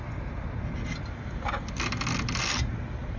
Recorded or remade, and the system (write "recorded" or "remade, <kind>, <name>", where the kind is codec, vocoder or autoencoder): recorded